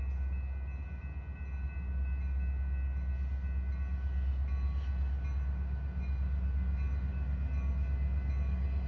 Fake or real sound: real